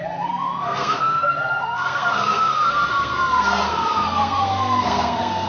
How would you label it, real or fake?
fake